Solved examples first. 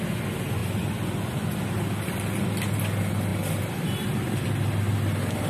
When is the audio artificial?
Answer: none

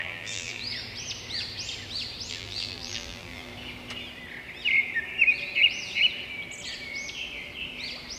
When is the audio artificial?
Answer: 0.0-0.6 (vocoder, BigVGAN v2); 2.3-3.5

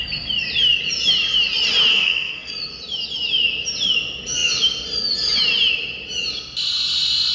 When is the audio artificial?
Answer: 1.9-2.5 (codec, SNAC)

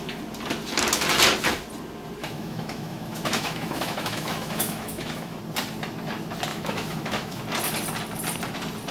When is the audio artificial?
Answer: 2.2-5.4 (autoencoder, DAC-VAE); 6.5-7.4